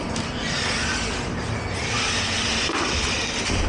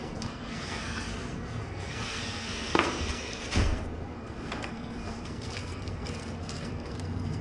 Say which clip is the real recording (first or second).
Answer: first